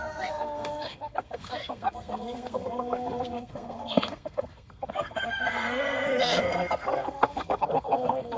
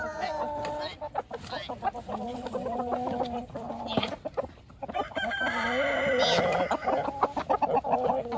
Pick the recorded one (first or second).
second